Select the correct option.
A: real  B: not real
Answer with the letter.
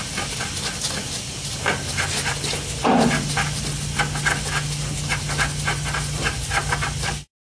A